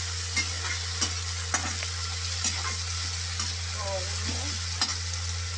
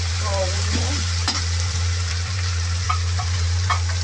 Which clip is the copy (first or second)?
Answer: second